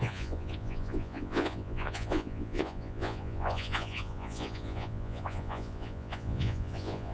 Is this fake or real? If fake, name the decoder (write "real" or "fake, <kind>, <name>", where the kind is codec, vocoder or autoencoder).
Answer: fake, vocoder, Vocos